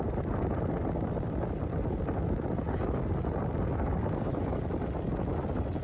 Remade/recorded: recorded